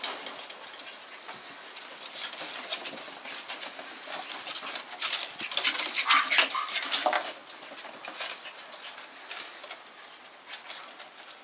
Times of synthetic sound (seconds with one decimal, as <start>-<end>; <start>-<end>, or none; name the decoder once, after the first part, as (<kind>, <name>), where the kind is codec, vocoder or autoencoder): none